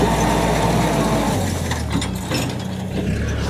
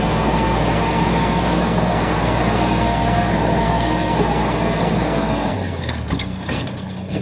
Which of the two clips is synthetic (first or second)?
second